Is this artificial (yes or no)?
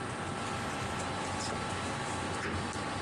no